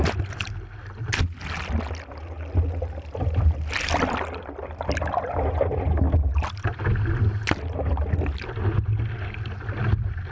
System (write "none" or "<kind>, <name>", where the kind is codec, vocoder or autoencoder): none